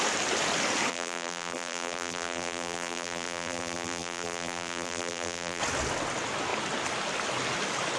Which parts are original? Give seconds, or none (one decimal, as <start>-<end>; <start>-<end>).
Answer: 0.0-0.9; 5.6-8.0